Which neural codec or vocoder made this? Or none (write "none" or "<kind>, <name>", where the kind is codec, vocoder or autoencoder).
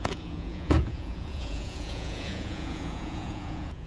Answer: vocoder, Vocos